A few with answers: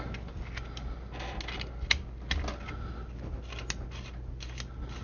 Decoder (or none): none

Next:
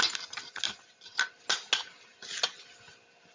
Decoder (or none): none